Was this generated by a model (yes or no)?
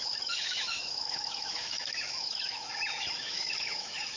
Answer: yes